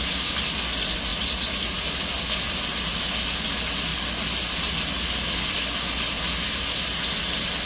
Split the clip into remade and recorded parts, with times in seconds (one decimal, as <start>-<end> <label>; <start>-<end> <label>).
0.0-7.7 recorded